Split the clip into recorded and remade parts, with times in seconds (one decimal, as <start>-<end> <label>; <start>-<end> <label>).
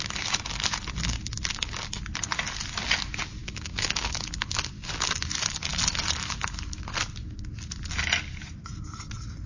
0.0-3.4 recorded; 3.4-4.1 remade; 4.1-9.5 recorded